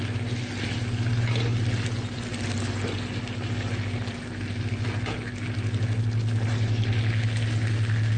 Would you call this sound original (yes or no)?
yes